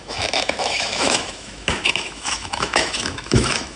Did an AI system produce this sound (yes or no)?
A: yes